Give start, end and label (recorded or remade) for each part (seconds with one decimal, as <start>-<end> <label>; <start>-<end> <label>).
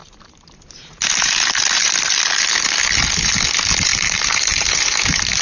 0.0-1.9 remade; 1.9-3.9 recorded; 3.9-5.4 remade